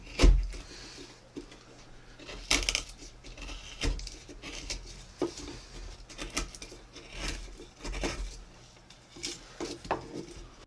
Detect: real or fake real